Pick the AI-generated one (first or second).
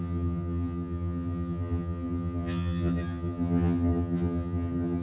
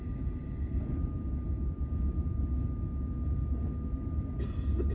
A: first